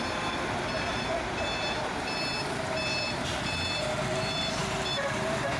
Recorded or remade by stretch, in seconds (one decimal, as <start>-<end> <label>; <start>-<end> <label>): 0.0-5.6 remade